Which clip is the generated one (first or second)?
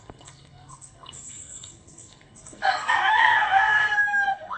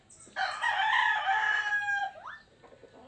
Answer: first